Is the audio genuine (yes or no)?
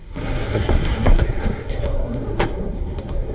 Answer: no